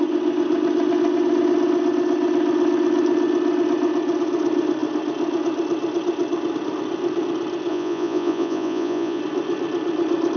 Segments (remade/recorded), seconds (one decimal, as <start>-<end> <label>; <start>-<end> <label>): 0.0-7.7 recorded; 7.7-9.2 remade; 9.2-10.4 recorded